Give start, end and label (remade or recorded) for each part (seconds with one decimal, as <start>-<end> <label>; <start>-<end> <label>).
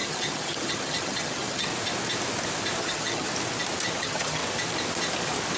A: 0.0-1.7 remade; 1.7-2.8 recorded; 2.8-3.3 remade; 3.3-4.0 recorded; 4.0-4.4 remade; 4.4-5.6 recorded